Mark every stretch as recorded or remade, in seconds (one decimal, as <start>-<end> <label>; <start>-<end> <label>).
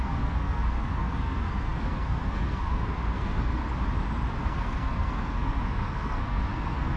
0.0-3.6 remade; 3.6-4.4 recorded; 4.4-7.0 remade